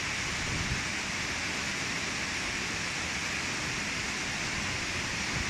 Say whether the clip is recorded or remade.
remade